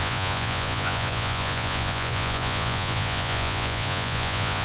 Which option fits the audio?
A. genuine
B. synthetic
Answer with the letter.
B